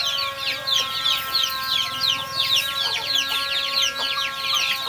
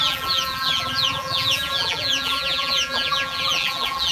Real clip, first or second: first